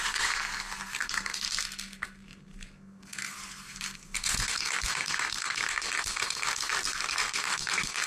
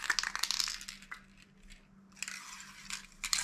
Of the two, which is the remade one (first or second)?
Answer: first